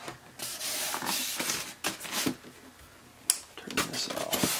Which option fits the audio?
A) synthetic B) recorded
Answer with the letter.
B